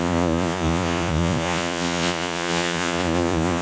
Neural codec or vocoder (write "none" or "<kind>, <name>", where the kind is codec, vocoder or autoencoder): vocoder, Vocos